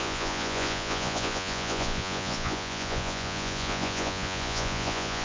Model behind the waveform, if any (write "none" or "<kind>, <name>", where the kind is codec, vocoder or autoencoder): vocoder, Vocos